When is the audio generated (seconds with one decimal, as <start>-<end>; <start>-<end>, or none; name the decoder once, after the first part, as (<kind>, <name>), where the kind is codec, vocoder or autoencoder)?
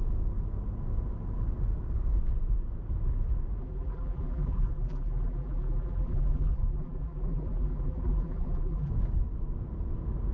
3.6-8.9 (vocoder, BigVGAN v2)